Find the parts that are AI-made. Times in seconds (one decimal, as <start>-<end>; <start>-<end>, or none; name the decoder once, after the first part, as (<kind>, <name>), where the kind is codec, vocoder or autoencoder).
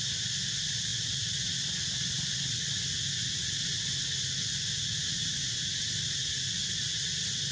none